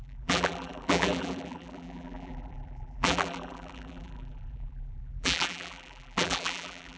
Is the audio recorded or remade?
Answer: remade